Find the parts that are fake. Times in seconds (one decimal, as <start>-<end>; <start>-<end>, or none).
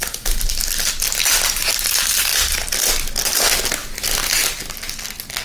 none